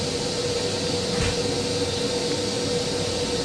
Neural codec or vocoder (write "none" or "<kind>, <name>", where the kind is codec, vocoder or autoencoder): none